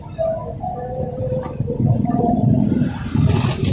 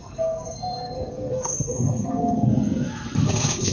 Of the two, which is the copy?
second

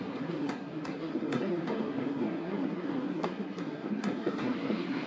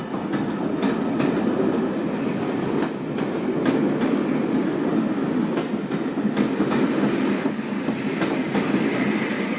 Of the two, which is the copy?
first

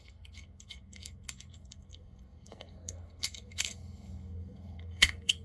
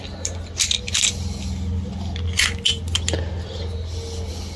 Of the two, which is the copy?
first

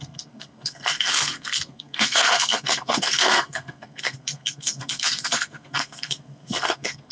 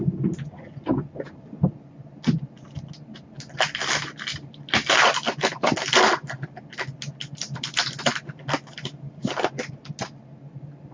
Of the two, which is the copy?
first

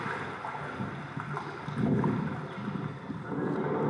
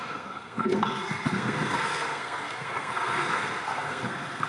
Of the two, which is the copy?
second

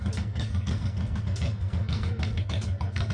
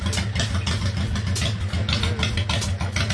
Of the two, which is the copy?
first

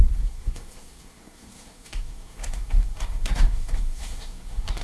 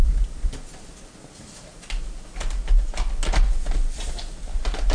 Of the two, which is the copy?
first